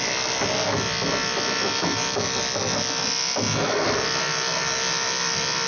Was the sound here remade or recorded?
recorded